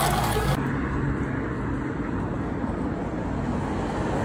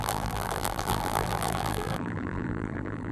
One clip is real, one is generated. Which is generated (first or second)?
second